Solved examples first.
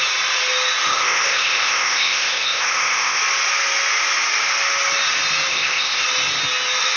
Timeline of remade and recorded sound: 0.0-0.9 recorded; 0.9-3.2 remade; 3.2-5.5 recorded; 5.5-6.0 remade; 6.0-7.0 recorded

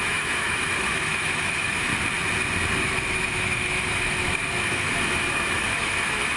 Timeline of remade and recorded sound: 0.0-1.9 remade; 1.9-2.8 recorded; 2.8-6.4 remade

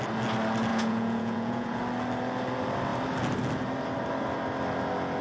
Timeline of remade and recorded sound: 0.0-0.7 recorded; 0.7-1.8 remade; 1.8-5.2 recorded